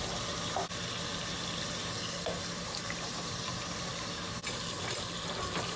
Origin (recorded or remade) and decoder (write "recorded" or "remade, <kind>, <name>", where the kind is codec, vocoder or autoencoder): recorded